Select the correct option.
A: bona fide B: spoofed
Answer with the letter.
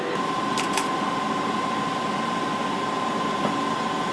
A